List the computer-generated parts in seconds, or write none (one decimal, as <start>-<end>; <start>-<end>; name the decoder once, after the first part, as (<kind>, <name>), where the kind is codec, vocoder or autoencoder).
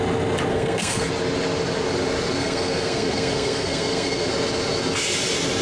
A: 0.5-1.1 (codec, SNAC); 2.4-4.3